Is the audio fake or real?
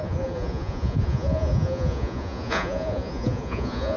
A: fake